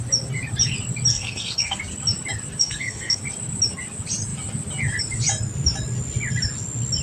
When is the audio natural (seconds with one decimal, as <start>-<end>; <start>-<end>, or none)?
0.0-1.1; 1.8-2.6; 3.2-7.0